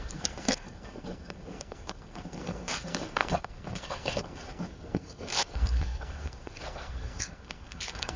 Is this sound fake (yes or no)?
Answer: yes